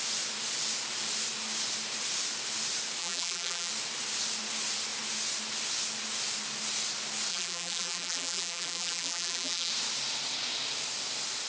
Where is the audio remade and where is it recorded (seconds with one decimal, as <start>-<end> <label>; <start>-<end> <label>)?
0.0-3.0 recorded; 3.0-3.7 remade; 3.7-7.3 recorded; 7.3-9.7 remade; 9.7-11.5 recorded